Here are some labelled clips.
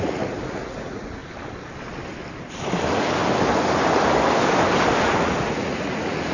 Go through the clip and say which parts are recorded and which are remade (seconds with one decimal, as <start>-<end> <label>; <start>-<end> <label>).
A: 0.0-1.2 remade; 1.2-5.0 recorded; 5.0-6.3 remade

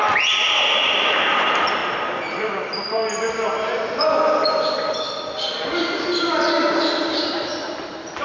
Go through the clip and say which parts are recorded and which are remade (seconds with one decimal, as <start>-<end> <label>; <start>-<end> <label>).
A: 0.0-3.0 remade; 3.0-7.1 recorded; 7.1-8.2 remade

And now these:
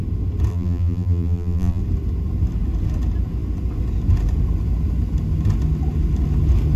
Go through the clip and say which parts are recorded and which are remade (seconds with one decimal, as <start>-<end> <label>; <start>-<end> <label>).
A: 0.0-0.5 recorded; 0.5-1.8 remade; 1.8-6.8 recorded

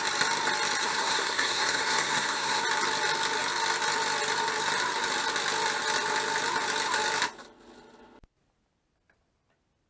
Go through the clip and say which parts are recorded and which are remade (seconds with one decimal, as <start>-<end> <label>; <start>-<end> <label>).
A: 0.0-0.8 recorded; 0.8-2.6 remade; 2.6-9.9 recorded

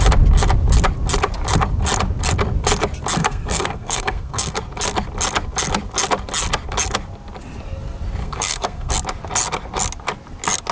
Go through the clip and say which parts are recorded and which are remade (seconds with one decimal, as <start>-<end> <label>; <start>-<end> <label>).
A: 0.0-3.2 recorded; 3.2-4.6 remade; 4.6-8.2 recorded; 8.2-8.9 remade; 8.9-10.7 recorded

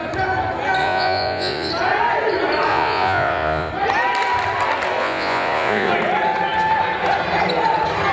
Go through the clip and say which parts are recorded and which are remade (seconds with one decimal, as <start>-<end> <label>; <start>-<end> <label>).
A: 0.0-0.8 recorded; 0.8-1.7 remade; 1.7-2.7 recorded; 2.7-3.7 remade; 3.7-5.0 recorded; 5.0-5.9 remade; 5.9-8.1 recorded